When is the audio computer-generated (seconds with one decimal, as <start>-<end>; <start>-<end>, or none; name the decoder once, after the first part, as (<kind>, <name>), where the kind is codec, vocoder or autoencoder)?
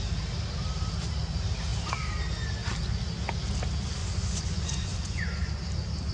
4.0-5.5 (vocoder, Vocos)